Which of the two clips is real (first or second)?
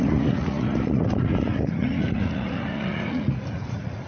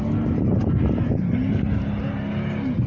second